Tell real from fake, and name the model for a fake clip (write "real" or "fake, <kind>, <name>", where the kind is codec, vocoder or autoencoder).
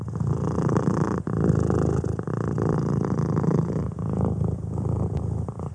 real